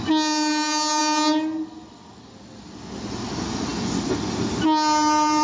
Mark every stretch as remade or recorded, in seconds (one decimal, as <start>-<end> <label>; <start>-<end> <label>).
0.0-5.4 recorded